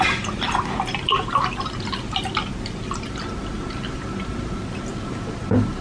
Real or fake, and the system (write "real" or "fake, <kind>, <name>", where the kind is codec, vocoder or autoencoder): real